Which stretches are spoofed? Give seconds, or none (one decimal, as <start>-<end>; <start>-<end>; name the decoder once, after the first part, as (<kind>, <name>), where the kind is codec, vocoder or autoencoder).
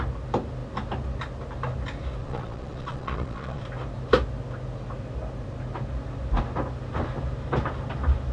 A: 2.2-3.6 (vocoder, Vocos)